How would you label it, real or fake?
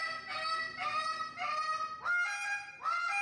real